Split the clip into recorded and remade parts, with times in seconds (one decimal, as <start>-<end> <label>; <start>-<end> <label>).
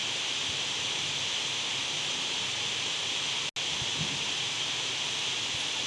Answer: 0.0-0.8 remade; 0.8-3.9 recorded; 3.9-4.7 remade; 4.7-5.9 recorded